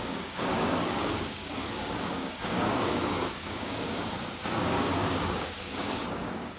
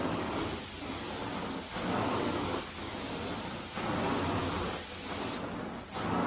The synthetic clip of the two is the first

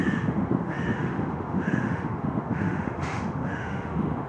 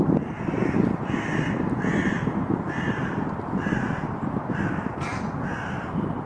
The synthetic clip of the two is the first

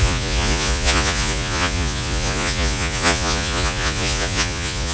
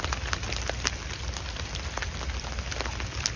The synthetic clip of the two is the first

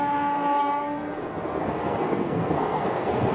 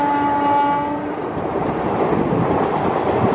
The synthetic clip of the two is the first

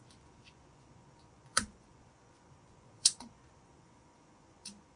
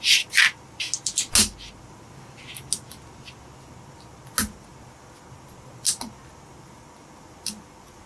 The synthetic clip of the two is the first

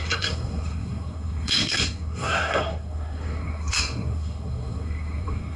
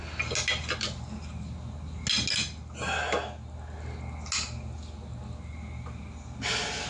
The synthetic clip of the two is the first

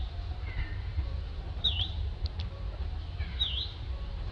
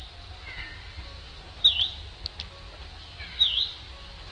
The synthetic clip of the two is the first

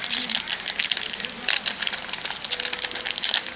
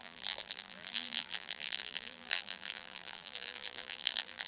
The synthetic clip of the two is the second